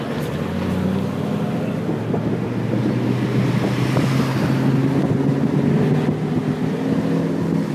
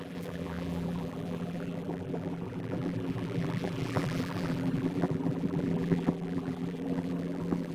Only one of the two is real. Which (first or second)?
first